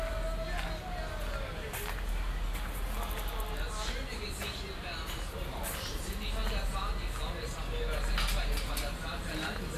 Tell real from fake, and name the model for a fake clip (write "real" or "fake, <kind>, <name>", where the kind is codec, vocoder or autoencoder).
real